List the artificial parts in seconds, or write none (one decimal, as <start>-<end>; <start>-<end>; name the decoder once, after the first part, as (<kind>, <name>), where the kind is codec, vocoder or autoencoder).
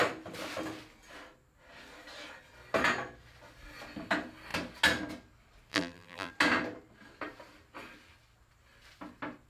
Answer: 5.7-6.3 (vocoder, BigVGAN v2)